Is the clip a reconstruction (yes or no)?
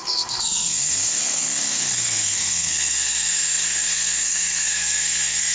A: yes